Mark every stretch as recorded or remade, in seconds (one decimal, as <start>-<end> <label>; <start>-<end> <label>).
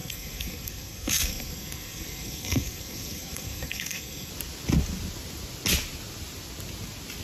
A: 0.0-4.3 remade; 4.3-7.2 recorded